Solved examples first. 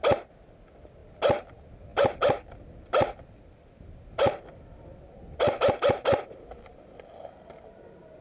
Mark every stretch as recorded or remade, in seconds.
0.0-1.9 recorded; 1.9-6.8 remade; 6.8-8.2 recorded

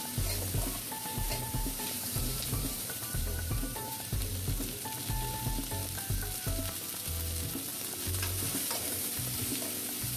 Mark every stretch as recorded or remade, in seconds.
0.0-1.0 recorded; 1.0-4.3 remade; 4.3-7.7 recorded; 7.7-9.2 remade; 9.2-10.2 recorded